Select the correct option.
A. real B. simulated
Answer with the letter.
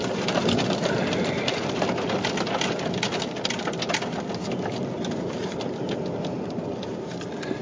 A